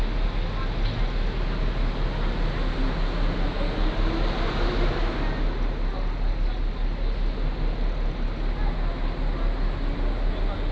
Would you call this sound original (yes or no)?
yes